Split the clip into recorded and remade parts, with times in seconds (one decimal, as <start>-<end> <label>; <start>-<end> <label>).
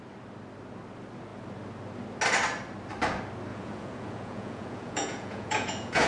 0.0-3.5 recorded; 3.5-6.1 remade